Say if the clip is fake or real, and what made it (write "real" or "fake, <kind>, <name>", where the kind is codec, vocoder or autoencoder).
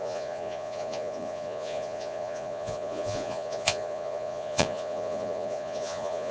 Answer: fake, vocoder, Vocos